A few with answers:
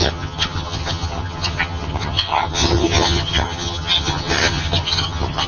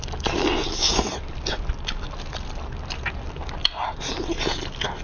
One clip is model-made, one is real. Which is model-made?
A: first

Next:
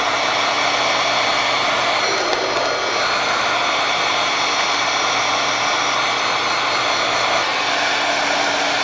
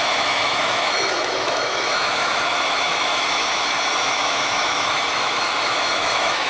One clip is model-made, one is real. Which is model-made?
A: second